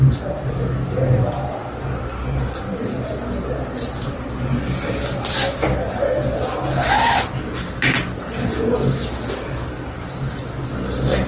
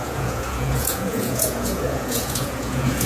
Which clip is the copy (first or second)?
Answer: second